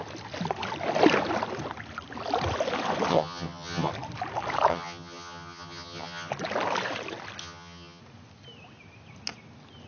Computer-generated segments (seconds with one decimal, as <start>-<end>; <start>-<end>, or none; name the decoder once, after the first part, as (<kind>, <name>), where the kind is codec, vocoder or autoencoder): 3.1-3.9 (vocoder, HiFi-GAN); 4.7-6.3; 7.4-8.0